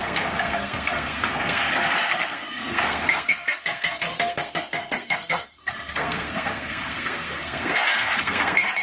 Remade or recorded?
remade